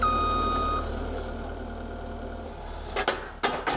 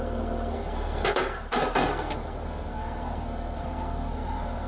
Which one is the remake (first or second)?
second